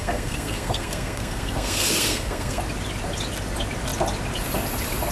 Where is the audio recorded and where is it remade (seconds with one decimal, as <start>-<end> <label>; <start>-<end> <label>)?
0.0-2.6 remade; 2.6-5.1 recorded